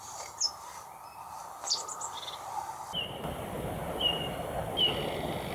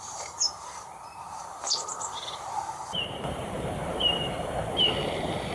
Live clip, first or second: first